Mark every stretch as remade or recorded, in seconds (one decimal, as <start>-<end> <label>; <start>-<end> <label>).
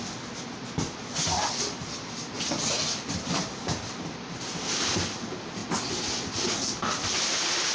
0.0-7.7 recorded